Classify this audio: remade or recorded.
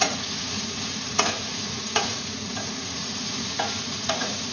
remade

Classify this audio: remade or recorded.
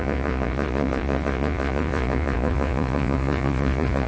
remade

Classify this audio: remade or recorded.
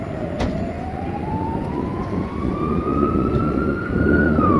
remade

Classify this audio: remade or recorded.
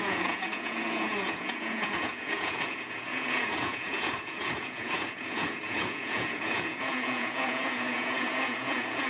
remade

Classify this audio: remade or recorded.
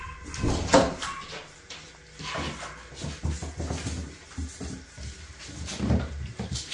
recorded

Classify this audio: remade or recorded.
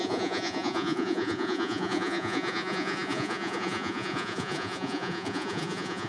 remade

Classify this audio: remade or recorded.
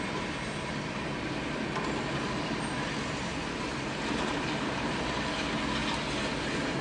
recorded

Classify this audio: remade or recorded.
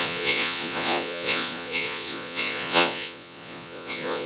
remade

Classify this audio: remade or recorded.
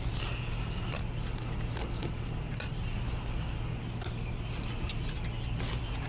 recorded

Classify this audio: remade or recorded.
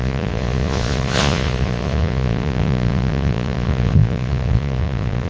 remade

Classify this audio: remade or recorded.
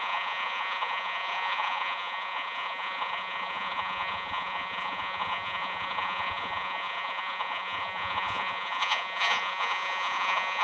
remade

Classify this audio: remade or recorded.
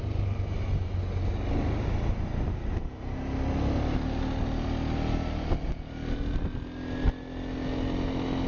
recorded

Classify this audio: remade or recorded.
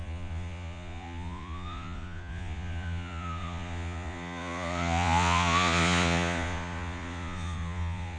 remade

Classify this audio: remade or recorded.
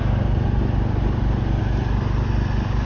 recorded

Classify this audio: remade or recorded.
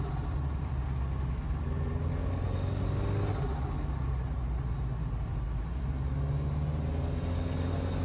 recorded